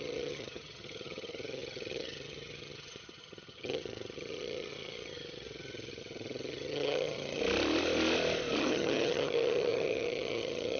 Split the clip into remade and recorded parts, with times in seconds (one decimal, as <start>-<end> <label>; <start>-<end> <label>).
0.0-7.4 remade; 7.4-8.6 recorded; 8.6-10.8 remade